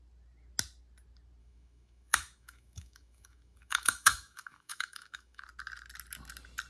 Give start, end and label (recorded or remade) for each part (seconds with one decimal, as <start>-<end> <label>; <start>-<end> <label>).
0.0-1.4 recorded; 1.4-5.4 remade; 5.4-6.7 recorded